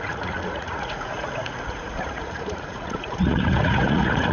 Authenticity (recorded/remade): remade